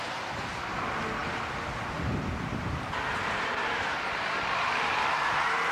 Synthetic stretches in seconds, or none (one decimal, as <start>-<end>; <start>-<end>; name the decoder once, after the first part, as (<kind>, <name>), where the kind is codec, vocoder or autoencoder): none